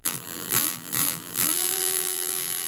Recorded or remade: remade